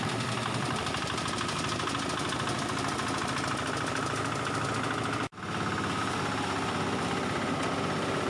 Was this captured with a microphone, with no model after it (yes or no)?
yes